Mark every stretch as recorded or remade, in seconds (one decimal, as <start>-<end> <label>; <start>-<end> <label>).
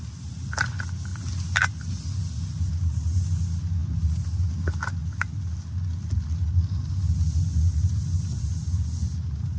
0.0-9.6 recorded